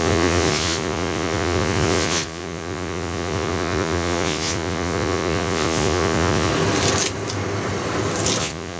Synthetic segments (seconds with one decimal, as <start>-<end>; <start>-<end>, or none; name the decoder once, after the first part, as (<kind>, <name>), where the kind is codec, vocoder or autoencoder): 0.0-6.5 (vocoder, Vocos); 8.4-8.8